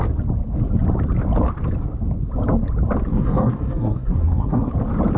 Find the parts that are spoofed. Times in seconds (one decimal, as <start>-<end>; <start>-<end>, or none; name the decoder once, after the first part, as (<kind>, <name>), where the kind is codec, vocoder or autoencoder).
3.1-4.7 (codec, SNAC)